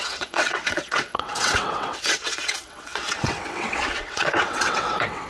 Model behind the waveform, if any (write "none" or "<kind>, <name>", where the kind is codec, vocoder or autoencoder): vocoder, WaveNeXt